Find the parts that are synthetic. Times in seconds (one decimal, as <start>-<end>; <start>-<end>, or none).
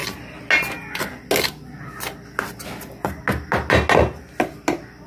none